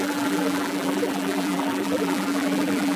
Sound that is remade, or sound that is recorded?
remade